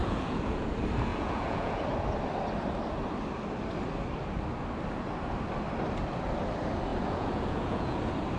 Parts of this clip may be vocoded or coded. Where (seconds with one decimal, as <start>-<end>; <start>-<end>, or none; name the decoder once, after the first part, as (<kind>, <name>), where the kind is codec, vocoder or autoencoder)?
0.0-0.7 (vocoder, Vocos); 1.1-1.8; 6.9-8.0